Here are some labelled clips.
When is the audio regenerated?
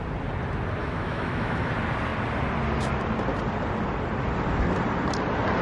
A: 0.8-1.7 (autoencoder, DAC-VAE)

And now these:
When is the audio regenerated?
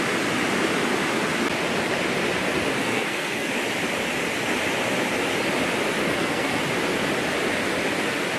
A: 2.8-3.5 (codec, SNAC); 6.0-6.6